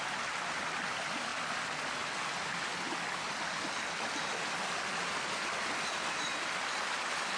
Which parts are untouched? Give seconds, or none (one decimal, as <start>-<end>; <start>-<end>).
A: 0.0-7.4